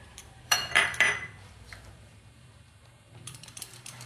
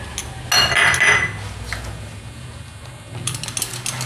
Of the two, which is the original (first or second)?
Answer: second